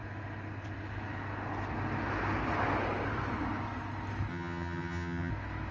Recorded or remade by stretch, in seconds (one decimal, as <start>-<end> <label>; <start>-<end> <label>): 0.0-4.3 recorded; 4.3-5.3 remade; 5.3-5.7 recorded